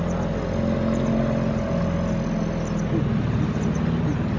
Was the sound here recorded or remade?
recorded